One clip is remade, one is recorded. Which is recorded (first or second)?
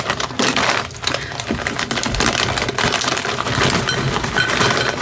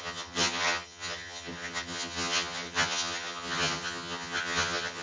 first